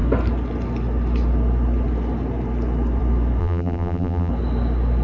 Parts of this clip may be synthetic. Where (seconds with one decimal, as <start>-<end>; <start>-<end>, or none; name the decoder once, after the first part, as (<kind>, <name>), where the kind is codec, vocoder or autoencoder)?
3.4-4.3 (vocoder, BigVGAN v2)

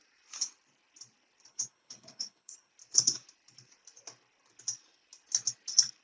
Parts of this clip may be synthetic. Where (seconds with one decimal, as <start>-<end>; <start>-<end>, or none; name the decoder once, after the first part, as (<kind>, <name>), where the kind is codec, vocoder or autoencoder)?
1.5-2.7 (codec, HILCodec)